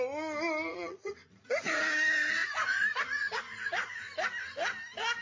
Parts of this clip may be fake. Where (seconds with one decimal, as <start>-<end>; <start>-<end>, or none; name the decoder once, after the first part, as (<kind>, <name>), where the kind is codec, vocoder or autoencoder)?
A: 0.7-1.8 (vocoder, Vocos); 2.4-4.0